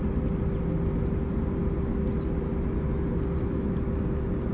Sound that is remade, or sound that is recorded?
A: recorded